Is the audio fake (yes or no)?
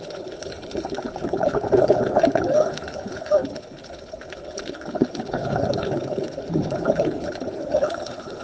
yes